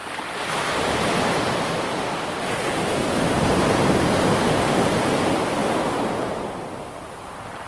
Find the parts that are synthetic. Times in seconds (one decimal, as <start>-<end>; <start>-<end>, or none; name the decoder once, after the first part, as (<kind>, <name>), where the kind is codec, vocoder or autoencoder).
3.5-4.9 (vocoder, BigVGAN v2)